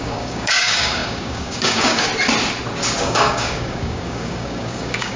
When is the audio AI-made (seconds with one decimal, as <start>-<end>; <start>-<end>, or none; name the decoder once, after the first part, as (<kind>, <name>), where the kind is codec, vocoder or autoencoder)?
0.0-2.1 (codec, DAC); 3.0-5.2

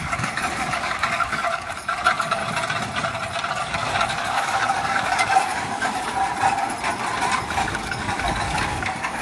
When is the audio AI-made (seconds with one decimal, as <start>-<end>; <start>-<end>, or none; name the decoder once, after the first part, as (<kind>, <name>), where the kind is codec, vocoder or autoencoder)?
0.0-2.4 (codec, DAC); 3.5-6.1; 7.4-9.2